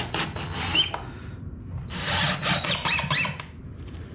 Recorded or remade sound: recorded